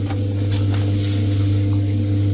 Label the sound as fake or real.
real